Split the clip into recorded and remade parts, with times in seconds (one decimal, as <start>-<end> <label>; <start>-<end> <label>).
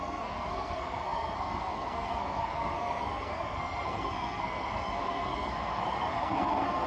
0.0-6.9 remade